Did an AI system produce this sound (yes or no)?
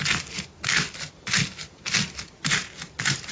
no